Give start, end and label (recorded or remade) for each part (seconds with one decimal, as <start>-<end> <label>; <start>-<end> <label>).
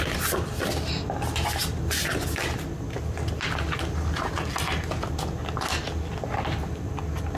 0.0-7.4 recorded